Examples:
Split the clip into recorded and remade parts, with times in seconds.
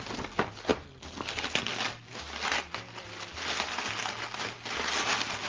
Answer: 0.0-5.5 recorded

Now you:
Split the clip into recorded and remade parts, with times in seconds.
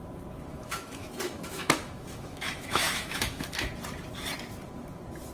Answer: 0.0-0.5 recorded; 0.5-3.7 remade; 3.7-5.3 recorded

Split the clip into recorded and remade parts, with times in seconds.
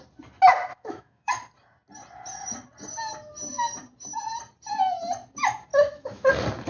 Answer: 0.0-0.7 recorded; 0.7-1.3 remade; 1.3-5.7 recorded; 5.7-6.3 remade; 6.3-6.7 recorded